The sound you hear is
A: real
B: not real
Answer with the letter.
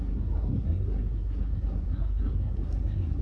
B